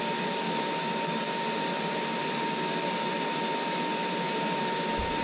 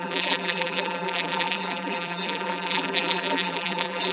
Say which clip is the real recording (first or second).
first